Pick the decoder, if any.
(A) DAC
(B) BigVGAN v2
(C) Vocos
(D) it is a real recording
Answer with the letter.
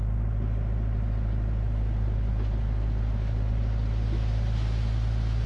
D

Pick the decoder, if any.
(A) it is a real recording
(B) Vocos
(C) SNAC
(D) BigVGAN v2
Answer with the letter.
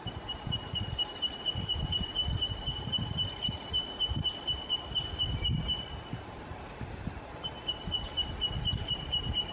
A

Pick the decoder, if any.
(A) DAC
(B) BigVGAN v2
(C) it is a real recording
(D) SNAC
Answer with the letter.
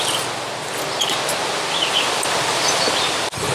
C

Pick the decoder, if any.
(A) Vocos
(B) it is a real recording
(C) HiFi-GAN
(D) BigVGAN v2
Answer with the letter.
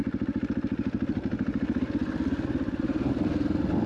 B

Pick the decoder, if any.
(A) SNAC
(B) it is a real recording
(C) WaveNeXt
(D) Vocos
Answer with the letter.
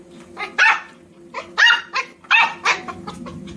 B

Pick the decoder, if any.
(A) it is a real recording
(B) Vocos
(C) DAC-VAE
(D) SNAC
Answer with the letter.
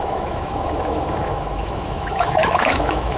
C